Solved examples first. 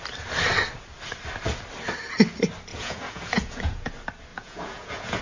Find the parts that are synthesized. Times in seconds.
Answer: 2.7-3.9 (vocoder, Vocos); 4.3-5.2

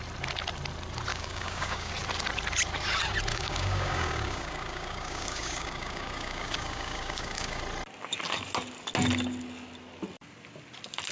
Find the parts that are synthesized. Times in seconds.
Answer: 1.1-1.9 (codec, DAC); 3.3-7.6

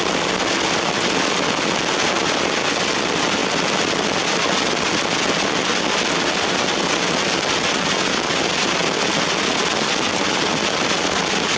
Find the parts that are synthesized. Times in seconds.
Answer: none

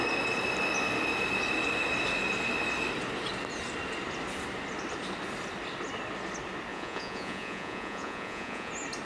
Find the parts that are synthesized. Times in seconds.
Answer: 6.7-8.7 (vocoder, Vocos)

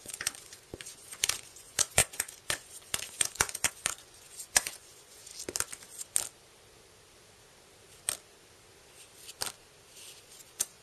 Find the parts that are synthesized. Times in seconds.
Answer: 0.0-5.3 (vocoder, Vocos); 10.2-10.8

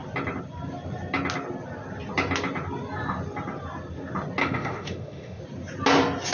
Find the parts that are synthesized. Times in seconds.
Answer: 4.4-5.4 (autoencoder, DAC-VAE)